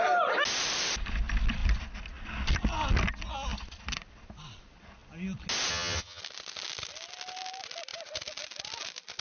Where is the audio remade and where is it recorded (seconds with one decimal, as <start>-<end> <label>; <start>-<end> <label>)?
0.0-5.7 recorded; 5.7-6.2 remade; 6.2-9.2 recorded

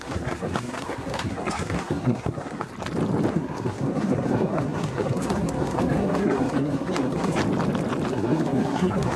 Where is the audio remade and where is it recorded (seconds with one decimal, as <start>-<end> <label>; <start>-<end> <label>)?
0.0-2.7 remade; 2.7-3.3 recorded; 3.3-7.4 remade; 7.4-8.1 recorded; 8.1-9.2 remade

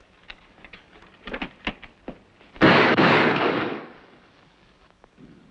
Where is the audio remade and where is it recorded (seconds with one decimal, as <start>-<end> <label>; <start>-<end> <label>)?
0.0-1.0 remade; 1.0-2.5 recorded; 2.5-5.5 remade

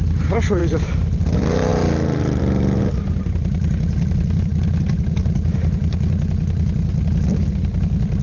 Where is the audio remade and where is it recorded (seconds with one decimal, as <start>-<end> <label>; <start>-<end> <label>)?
0.0-1.7 recorded; 1.7-2.4 remade; 2.4-8.2 recorded

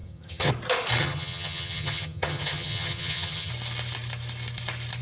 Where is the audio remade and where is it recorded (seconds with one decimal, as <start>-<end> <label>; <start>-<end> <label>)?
0.0-0.5 remade; 0.5-1.0 recorded; 1.0-3.5 remade; 3.5-5.0 recorded